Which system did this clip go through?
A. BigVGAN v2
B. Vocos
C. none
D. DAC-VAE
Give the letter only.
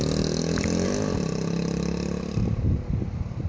C